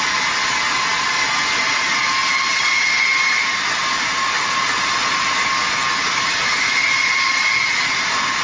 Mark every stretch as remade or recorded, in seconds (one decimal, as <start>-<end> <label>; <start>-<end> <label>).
0.0-8.4 recorded